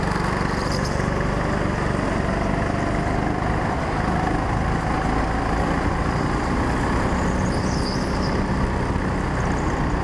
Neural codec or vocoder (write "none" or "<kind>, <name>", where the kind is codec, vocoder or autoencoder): none